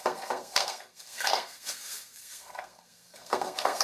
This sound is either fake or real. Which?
fake